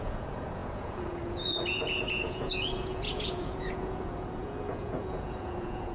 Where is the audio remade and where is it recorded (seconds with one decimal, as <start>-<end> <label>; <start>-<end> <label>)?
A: 0.0-5.9 remade